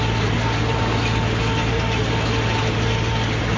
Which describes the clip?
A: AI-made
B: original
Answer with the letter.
B